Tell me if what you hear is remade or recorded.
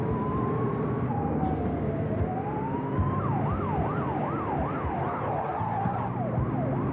recorded